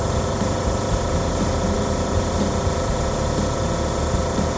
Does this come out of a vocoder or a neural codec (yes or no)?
yes